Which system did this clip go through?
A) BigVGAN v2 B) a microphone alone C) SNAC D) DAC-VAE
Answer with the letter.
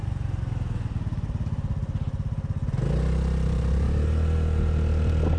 B